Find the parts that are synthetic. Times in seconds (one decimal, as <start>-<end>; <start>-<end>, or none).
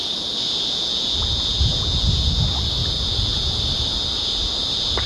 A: none